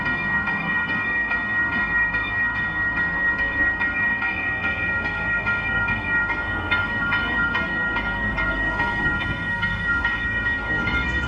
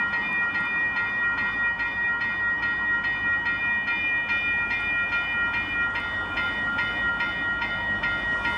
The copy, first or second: first